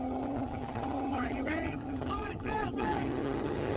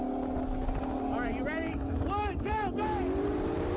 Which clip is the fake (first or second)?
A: first